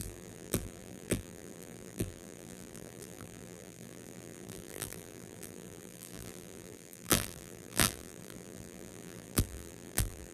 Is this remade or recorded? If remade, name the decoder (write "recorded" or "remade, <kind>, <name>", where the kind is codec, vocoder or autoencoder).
remade, vocoder, BigVGAN v2